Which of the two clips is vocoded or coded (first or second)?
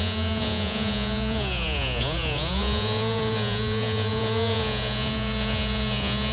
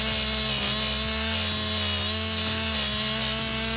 first